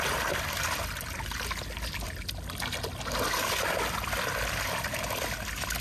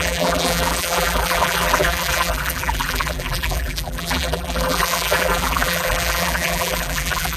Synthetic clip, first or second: second